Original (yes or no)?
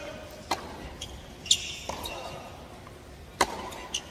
yes